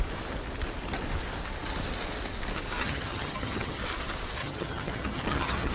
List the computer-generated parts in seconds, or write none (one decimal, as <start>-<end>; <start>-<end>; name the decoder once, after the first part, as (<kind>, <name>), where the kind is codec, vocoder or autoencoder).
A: 2.8-3.8 (vocoder, HiFi-GAN); 4.4-5.7